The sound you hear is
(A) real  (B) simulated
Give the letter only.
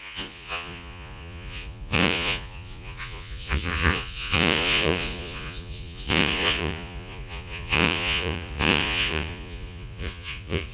B